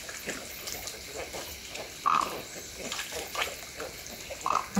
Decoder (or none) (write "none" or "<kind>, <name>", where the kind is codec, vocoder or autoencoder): none